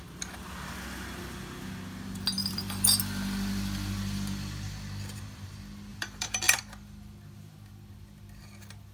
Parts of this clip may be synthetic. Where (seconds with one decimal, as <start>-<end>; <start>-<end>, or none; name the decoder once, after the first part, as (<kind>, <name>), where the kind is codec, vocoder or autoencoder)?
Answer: 2.4-3.0 (vocoder, BigVGAN v2); 5.9-6.6